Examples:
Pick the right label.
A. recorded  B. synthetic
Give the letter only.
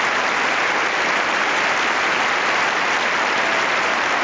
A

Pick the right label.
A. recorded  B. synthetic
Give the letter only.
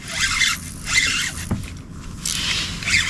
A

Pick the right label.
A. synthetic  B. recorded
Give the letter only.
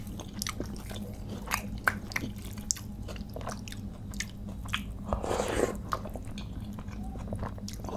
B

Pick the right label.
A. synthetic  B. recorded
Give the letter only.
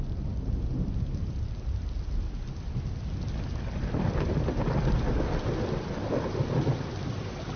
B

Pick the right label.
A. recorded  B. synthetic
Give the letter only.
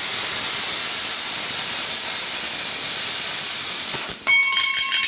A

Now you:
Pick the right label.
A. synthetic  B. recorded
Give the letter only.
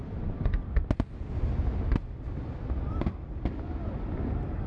B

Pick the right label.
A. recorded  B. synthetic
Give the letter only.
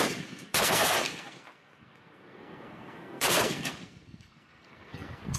B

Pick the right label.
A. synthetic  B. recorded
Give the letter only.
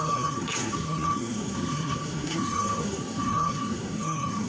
A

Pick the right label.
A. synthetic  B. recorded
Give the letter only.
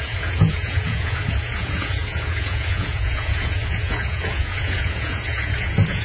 A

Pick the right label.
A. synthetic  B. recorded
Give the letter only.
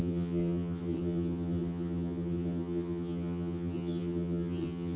A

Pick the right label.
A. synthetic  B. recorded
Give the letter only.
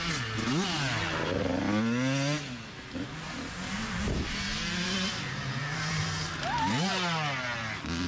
B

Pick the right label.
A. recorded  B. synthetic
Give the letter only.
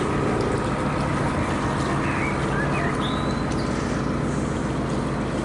A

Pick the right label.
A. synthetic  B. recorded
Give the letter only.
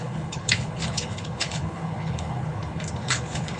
A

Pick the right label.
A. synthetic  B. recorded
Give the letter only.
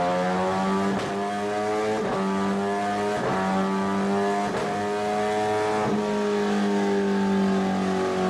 B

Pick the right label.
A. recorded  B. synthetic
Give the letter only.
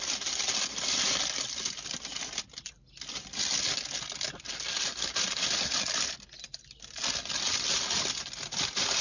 A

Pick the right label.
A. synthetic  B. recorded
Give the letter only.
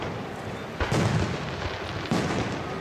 B